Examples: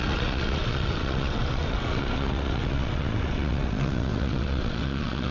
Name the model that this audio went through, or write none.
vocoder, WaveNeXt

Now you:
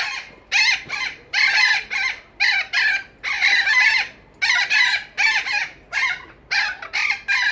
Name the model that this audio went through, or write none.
none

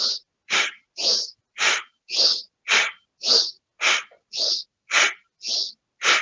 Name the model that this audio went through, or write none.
none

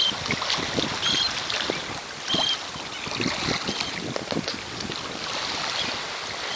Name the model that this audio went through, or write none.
none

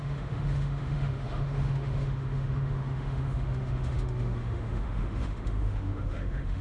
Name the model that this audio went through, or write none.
autoencoder, DAC-VAE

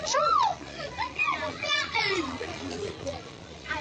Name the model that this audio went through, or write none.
vocoder, Vocos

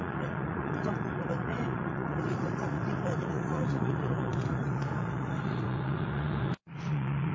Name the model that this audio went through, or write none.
vocoder, Vocos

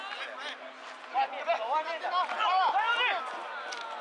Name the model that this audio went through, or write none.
none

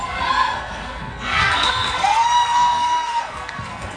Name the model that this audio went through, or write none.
codec, SNAC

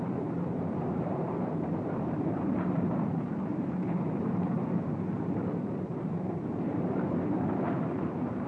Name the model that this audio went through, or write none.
vocoder, BigVGAN v2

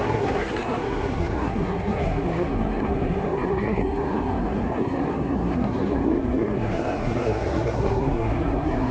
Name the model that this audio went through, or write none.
codec, SNAC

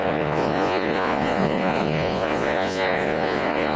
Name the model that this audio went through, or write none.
vocoder, Vocos